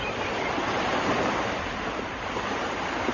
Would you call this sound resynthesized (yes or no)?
no